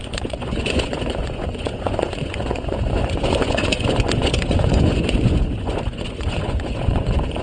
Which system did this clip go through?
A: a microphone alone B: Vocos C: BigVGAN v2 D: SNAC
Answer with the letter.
B